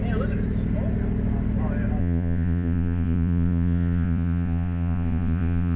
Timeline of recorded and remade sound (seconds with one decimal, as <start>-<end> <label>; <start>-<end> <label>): 0.0-2.0 recorded; 2.0-5.8 remade